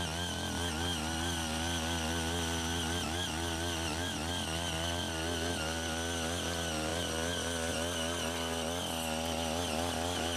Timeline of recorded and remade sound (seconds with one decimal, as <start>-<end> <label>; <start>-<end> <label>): 0.0-10.4 recorded